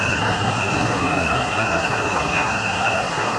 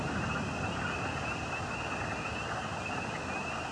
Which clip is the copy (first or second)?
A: first